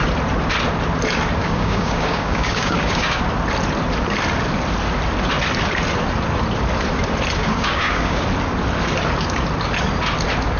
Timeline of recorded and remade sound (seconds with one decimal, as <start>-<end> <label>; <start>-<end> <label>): 0.0-1.4 recorded; 1.4-3.2 remade; 3.2-7.4 recorded; 7.4-8.2 remade; 8.2-10.6 recorded